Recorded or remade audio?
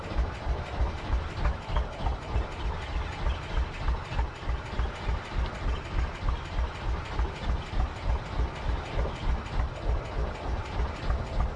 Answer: recorded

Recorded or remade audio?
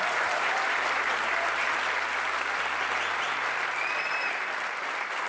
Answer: recorded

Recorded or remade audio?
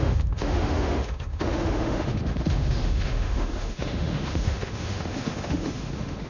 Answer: remade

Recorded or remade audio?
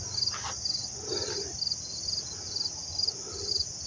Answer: recorded